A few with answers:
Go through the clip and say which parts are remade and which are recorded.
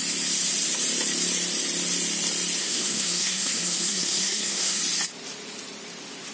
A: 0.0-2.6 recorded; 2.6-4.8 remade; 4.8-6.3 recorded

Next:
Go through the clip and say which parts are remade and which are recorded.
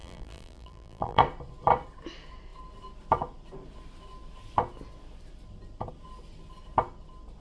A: 0.0-1.2 remade; 1.2-7.4 recorded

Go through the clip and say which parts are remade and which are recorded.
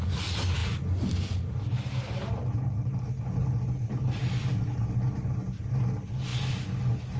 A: 0.0-7.2 recorded